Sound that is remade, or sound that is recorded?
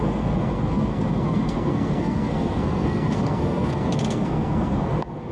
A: remade